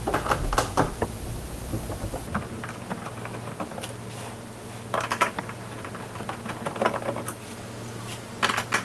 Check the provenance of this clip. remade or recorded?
recorded